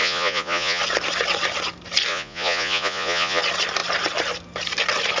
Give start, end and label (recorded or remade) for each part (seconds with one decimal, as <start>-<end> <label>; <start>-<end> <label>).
0.0-0.8 remade; 0.8-2.1 recorded; 2.1-3.4 remade; 3.4-5.2 recorded